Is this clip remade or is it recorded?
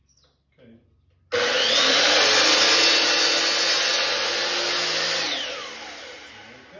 recorded